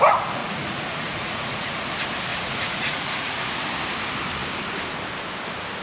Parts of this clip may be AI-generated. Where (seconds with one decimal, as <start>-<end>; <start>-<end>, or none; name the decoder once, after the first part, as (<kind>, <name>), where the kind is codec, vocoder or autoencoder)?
0.4-1.7 (vocoder, Vocos); 2.3-3.4